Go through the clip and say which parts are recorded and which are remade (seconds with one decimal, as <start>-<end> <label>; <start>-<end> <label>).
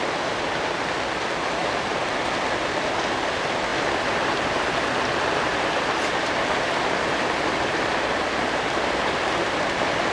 0.0-1.6 remade; 1.6-2.6 recorded; 2.6-10.1 remade